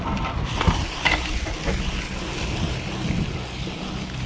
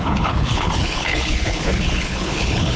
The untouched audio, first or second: first